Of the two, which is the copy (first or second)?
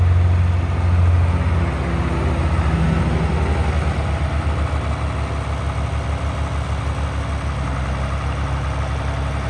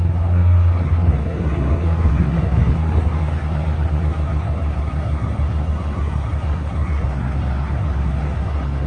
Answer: second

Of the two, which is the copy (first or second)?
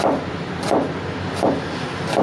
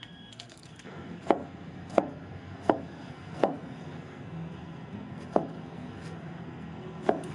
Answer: second